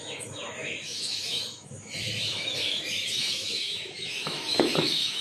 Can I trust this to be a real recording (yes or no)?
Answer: no